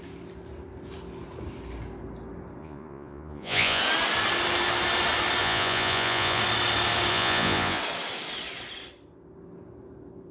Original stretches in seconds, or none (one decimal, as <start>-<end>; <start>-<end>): 0.0-2.6; 3.8-5.4; 6.4-7.1; 7.8-10.3

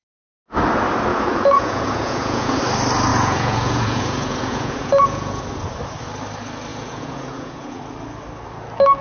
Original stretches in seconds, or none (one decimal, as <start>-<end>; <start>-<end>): 0.0-1.1; 2.6-3.1; 5.4-6.7; 7.8-9.0

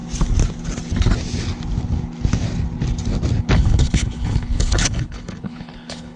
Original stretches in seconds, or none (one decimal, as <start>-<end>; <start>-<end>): 0.0-3.4

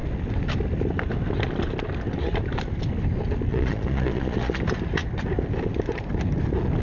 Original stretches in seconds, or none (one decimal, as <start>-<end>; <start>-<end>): 0.0-3.5; 4.6-6.8

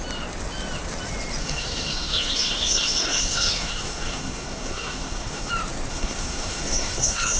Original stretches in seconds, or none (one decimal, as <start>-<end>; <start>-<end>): 0.0-1.4; 5.5-5.9